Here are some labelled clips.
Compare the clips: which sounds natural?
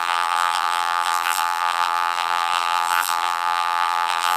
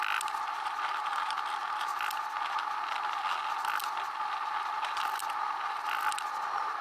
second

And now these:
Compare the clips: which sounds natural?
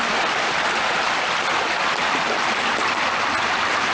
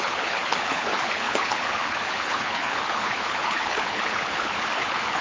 first